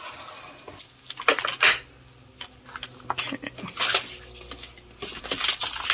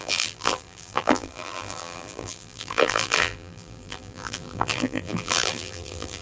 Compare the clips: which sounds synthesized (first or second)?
second